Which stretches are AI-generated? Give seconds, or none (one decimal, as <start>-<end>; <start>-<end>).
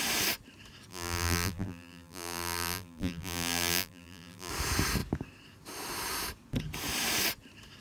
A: 0.9-4.5